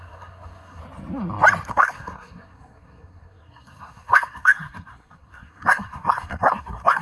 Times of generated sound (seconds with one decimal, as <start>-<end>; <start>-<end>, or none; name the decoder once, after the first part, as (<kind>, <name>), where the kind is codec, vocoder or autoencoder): 0.0-0.8 (codec, SNAC); 1.7-7.0